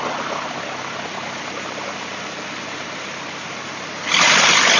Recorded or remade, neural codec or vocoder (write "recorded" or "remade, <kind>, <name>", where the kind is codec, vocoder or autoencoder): recorded